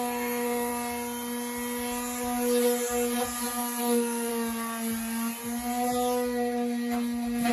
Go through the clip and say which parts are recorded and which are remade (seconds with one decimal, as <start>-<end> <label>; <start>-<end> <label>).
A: 0.0-0.7 remade; 0.7-3.8 recorded; 3.8-4.3 remade; 4.3-7.5 recorded